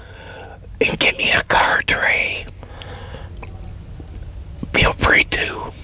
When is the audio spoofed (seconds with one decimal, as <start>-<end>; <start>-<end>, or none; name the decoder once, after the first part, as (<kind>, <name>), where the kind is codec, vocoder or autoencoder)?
0.0-0.5 (codec, HILCodec); 1.1-1.7; 5.2-5.8